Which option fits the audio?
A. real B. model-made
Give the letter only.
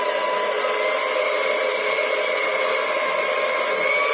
A